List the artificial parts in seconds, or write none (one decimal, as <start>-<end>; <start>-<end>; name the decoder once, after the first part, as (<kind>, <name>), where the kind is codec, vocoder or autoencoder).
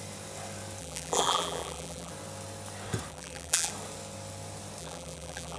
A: 0.8-2.1 (vocoder, BigVGAN v2); 3.1-3.7; 4.8-5.6